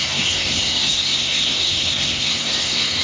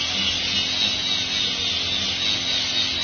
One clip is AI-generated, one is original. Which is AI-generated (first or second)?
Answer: first